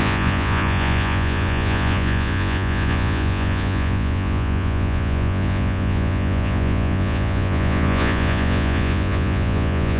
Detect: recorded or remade remade